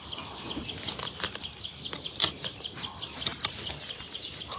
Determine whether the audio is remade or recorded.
recorded